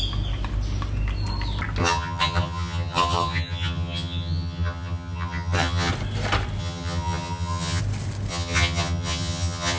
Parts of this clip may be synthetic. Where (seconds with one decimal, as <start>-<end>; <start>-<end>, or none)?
1.8-5.9; 6.6-7.8; 8.3-9.8